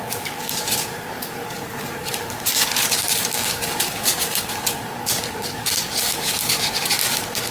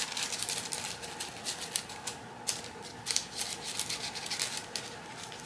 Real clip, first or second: second